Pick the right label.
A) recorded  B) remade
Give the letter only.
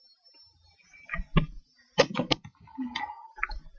A